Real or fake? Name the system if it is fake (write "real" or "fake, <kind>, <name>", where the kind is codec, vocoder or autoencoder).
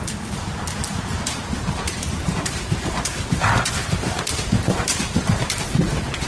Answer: fake, vocoder, BigVGAN v2